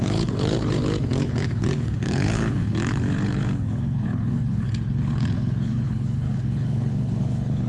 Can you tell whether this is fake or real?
fake